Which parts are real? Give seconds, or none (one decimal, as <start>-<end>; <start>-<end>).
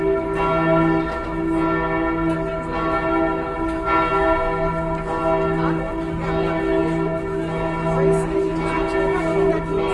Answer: 0.0-9.9